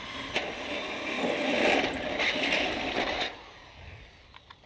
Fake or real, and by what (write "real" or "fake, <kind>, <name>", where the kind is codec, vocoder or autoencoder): real